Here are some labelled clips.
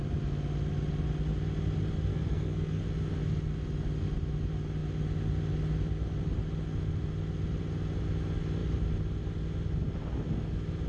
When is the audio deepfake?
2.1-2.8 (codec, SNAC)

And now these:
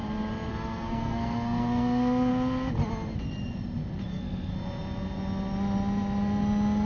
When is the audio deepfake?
0.5-2.3 (codec, SNAC); 4.1-4.5

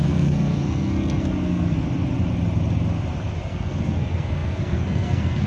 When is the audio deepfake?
0.0-1.8 (codec, SNAC); 3.4-5.5

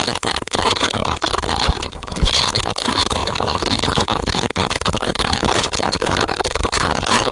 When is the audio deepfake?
0.0-7.3 (codec, SNAC)

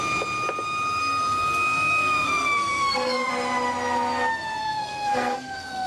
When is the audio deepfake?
1.0-3.3 (codec, SNAC); 4.6-5.9